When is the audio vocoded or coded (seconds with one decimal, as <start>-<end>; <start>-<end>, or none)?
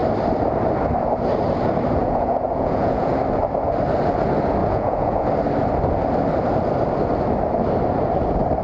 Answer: 2.0-3.1; 4.6-5.3